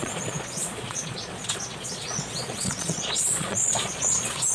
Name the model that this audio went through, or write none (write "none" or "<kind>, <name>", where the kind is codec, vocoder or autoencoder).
vocoder, Vocos